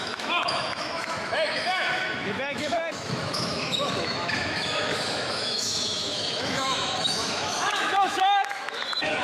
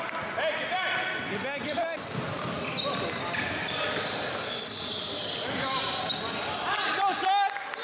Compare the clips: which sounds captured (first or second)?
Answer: second